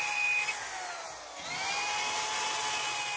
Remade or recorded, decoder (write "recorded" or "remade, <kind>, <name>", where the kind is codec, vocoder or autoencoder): recorded